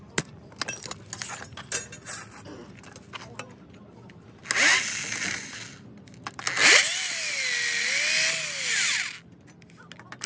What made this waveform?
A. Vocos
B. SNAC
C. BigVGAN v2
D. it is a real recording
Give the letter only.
D